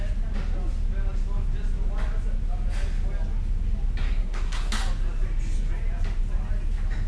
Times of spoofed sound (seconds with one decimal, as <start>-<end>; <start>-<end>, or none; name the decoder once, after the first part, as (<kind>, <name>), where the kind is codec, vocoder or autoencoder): 4.0-4.7 (codec, SNAC)

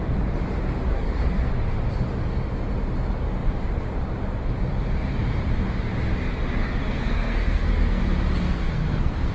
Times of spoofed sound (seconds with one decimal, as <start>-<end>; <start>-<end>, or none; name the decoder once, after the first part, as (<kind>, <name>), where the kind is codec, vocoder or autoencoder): 0.9-1.5 (codec, SNAC); 6.6-8.0; 8.4-9.3

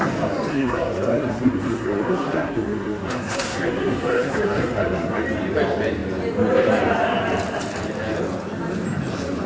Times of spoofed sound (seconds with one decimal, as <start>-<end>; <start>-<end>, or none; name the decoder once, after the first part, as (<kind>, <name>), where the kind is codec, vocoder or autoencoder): 0.5-5.2 (codec, SNAC)

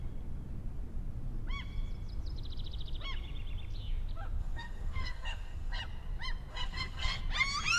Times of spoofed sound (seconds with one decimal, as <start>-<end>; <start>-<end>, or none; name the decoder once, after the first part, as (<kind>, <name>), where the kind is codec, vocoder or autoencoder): 4.4-5.8 (codec, SNAC); 6.5-7.2

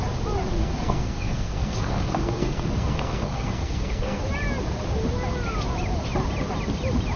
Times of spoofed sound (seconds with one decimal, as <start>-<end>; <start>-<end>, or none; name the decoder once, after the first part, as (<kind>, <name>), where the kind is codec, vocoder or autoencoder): 0.6-4.2 (codec, SNAC)

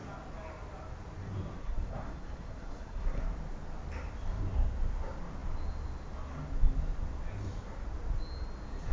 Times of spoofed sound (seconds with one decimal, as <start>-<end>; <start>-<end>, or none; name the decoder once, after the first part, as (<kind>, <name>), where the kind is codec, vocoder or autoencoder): 1.6-3.2 (codec, SNAC)